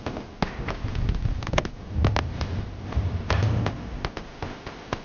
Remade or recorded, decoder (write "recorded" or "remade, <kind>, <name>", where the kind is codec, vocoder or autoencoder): recorded